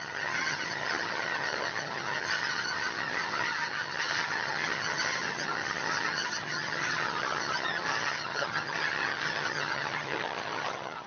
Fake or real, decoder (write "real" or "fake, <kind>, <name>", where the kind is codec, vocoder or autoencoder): fake, vocoder, HiFi-GAN